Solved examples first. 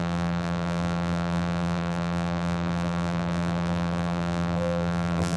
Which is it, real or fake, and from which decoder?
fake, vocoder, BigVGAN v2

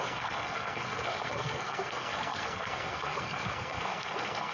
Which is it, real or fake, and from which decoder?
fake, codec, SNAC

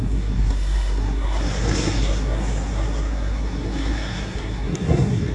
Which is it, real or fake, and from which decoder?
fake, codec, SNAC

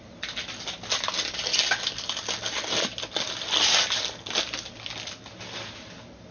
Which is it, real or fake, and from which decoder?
real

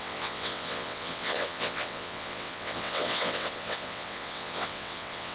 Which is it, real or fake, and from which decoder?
fake, vocoder, WaveNeXt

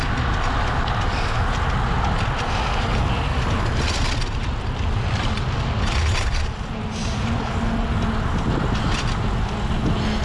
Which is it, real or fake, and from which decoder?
real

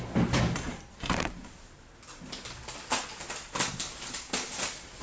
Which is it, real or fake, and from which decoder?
real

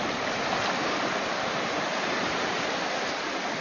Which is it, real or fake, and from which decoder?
real